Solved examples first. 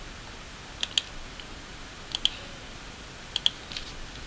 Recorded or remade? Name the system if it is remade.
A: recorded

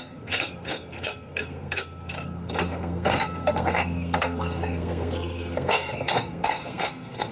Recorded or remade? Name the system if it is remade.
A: remade, codec, SNAC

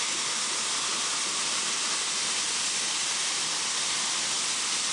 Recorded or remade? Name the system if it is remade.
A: recorded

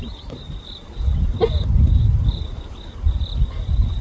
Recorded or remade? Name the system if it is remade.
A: recorded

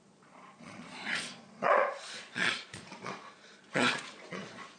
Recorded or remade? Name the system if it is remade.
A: remade, vocoder, Vocos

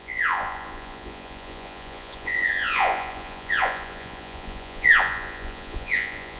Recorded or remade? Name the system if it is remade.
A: remade, vocoder, Vocos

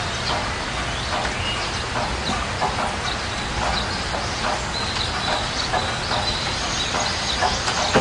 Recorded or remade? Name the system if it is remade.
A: recorded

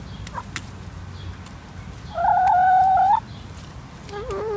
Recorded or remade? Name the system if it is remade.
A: recorded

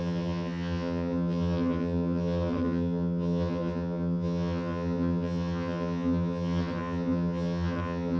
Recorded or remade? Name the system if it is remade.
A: remade, vocoder, HiFi-GAN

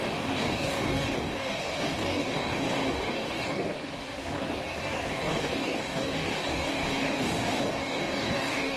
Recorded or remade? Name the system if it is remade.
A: remade, codec, DAC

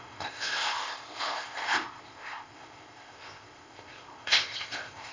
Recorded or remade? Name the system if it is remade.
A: remade, codec, ZipCodec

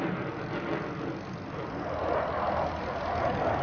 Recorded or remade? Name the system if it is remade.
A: recorded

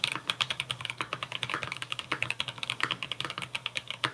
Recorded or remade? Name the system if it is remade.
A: remade, codec, DAC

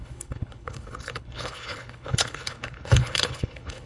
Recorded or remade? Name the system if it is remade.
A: remade, codec, HILCodec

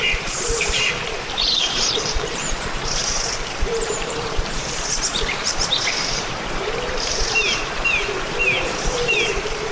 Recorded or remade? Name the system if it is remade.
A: remade, vocoder, BigVGAN v2